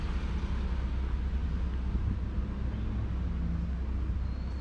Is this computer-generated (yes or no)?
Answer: no